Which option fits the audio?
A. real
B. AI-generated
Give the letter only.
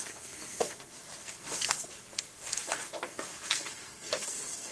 B